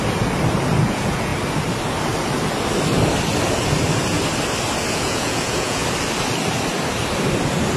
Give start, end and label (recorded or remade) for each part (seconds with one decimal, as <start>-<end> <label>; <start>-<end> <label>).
0.0-0.8 recorded; 0.8-1.3 remade; 1.3-4.9 recorded; 4.9-5.8 remade; 5.8-7.8 recorded